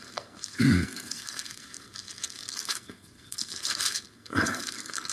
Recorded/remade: remade